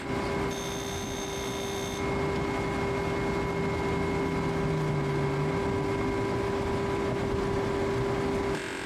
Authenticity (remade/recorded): recorded